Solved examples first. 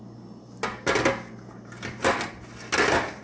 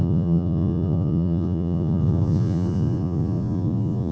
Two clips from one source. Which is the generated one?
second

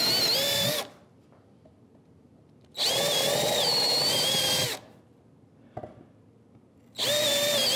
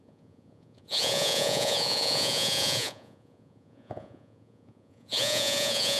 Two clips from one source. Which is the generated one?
second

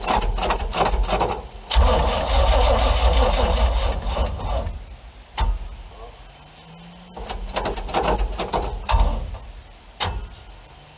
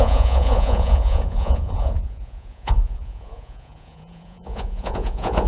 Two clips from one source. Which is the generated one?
second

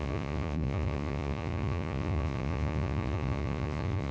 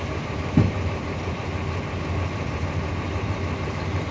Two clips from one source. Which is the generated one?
first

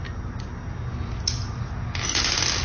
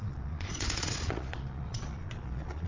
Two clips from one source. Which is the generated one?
second